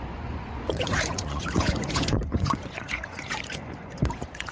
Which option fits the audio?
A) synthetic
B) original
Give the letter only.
A